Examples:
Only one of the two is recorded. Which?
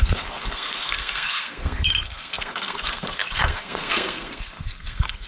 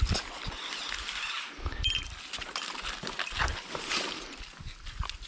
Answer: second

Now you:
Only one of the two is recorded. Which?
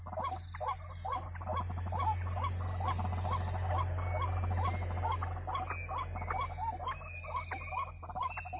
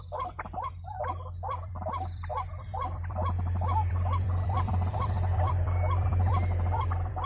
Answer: first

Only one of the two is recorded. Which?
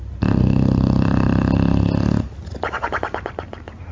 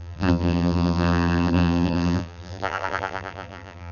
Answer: first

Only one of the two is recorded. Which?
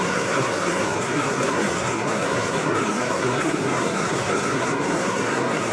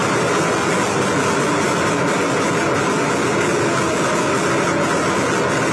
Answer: second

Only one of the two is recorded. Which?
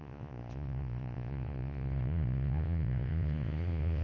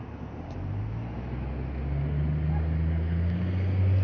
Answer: second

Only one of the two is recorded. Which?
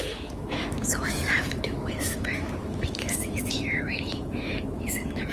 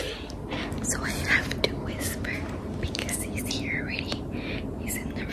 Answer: second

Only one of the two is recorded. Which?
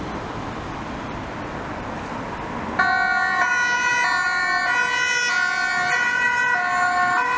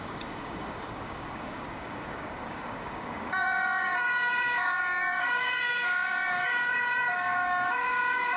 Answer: first